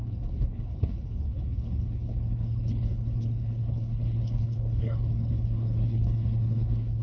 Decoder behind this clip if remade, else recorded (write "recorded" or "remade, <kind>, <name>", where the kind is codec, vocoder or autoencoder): remade, codec, HILCodec